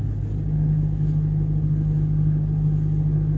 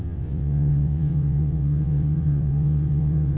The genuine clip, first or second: first